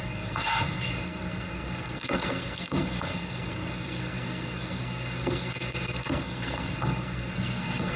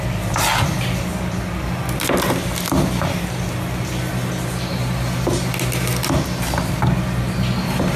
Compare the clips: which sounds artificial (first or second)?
first